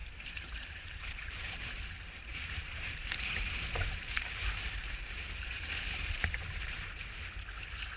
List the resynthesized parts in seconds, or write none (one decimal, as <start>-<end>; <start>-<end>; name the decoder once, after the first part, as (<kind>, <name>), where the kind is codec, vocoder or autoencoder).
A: 0.0-1.6 (vocoder, BigVGAN v2); 2.3-7.1